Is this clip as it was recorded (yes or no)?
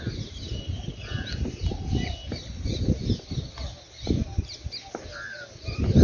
yes